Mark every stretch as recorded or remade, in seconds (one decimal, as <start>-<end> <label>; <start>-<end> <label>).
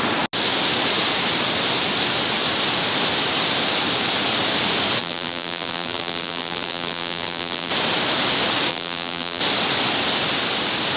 0.0-5.0 recorded; 5.0-7.7 remade; 7.7-8.7 recorded; 8.7-9.4 remade; 9.4-11.0 recorded